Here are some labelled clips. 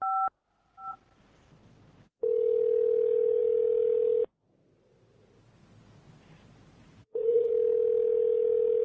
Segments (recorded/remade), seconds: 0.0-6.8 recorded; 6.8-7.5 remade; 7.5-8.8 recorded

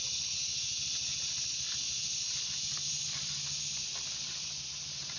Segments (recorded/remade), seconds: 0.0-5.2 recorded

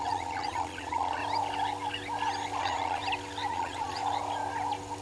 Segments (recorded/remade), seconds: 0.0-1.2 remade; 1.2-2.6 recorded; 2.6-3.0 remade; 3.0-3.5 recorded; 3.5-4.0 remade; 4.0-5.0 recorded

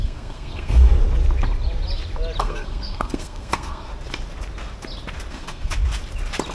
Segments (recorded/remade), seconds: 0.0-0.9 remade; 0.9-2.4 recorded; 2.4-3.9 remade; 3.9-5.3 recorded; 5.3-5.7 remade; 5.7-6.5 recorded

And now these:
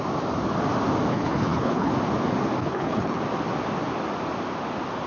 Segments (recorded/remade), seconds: 0.0-1.1 recorded; 1.1-1.9 remade; 1.9-2.6 recorded; 2.6-3.2 remade; 3.2-5.1 recorded

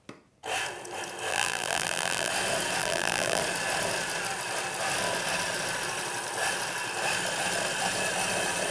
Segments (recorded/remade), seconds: 0.0-1.3 recorded; 1.3-2.3 remade; 2.3-2.8 recorded; 2.8-3.4 remade; 3.4-8.7 recorded

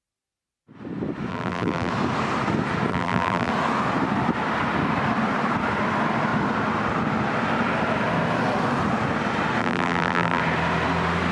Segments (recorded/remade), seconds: 0.0-1.3 recorded; 1.3-1.9 remade; 1.9-2.9 recorded; 2.9-3.5 remade; 3.5-9.6 recorded; 9.6-10.4 remade; 10.4-11.3 recorded